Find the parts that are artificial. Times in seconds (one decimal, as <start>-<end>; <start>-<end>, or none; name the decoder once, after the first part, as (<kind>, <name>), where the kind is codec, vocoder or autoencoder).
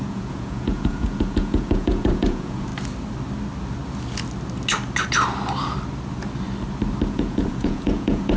0.0-2.7 (vocoder, Vocos); 7.1-8.4